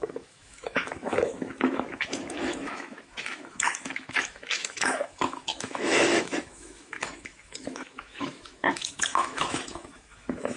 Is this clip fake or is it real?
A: fake